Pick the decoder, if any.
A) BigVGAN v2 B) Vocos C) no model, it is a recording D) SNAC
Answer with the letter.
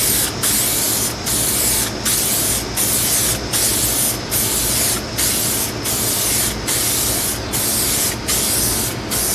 C